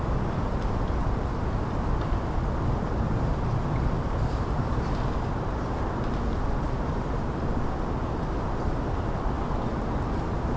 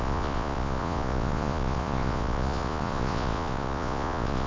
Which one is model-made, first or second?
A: second